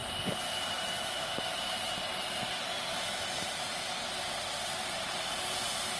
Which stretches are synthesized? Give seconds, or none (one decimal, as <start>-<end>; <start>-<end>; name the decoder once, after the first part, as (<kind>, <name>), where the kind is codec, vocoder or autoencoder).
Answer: none